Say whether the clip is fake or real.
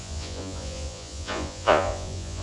fake